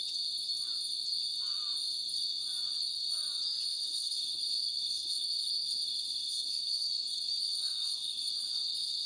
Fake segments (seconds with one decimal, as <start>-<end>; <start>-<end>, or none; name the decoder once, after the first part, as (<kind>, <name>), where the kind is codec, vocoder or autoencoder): 3.7-6.9 (codec, SNAC); 7.4-8.3